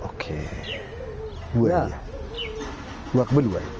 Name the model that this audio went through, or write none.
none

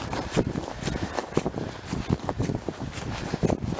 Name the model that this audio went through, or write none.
none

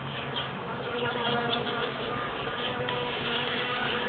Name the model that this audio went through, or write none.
codec, DAC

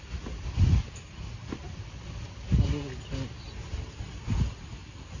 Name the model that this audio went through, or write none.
none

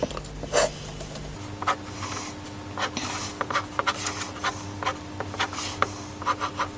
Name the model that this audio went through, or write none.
none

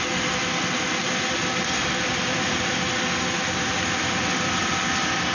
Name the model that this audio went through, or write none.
none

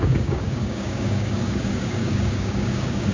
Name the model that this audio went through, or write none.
codec, DAC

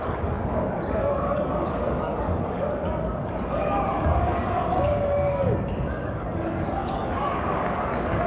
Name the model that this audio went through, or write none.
codec, DAC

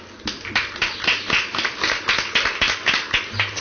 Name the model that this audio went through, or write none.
none